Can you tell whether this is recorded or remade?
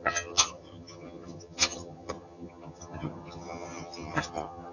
remade